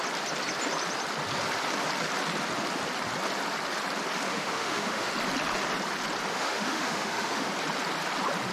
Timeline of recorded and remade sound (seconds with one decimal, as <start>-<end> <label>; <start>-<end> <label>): 0.0-4.3 recorded; 4.3-5.1 remade; 5.1-6.3 recorded; 6.3-7.5 remade; 7.5-8.5 recorded

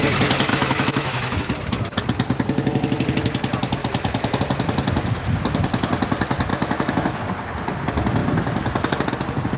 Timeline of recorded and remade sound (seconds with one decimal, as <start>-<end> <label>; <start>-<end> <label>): 0.0-0.5 recorded; 0.5-1.4 remade; 1.4-3.8 recorded; 3.8-4.4 remade; 4.4-6.5 recorded; 6.5-7.2 remade; 7.2-9.6 recorded

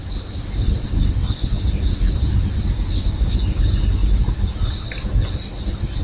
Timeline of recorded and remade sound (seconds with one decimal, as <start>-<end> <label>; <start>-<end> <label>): 0.0-6.0 recorded

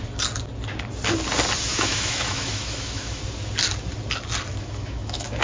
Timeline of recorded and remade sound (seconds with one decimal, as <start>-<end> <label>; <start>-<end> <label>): 0.0-1.7 recorded; 1.7-3.2 remade; 3.2-4.5 recorded; 4.5-5.4 remade

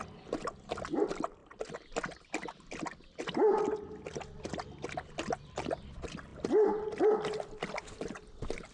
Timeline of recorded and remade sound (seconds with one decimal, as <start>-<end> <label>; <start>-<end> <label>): 0.0-8.7 recorded

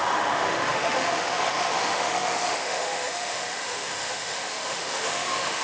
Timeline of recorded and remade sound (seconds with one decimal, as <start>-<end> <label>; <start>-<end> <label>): 0.0-5.6 remade

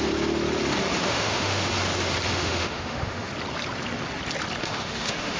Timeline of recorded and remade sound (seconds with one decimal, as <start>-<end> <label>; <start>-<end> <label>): 0.0-1.0 recorded; 1.0-1.7 remade; 1.7-2.3 recorded; 2.3-3.3 remade; 3.3-4.6 recorded; 4.6-5.4 remade

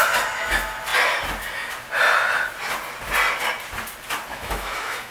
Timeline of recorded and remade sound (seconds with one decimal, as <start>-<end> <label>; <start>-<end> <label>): 0.0-4.3 recorded; 4.3-5.1 remade